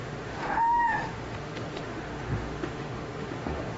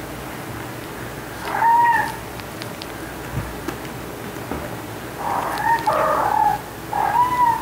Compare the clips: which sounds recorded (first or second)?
second